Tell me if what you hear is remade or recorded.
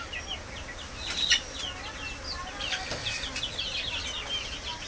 recorded